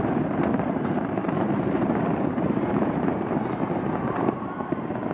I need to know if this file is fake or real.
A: fake